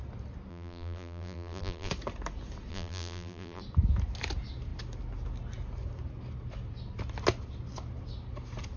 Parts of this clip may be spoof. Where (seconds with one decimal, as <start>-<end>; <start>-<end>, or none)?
0.5-1.9; 2.7-3.6